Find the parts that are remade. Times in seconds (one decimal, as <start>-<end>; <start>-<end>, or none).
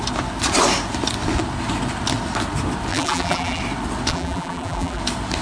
2.9-3.6; 4.1-5.0